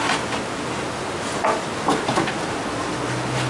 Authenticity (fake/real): real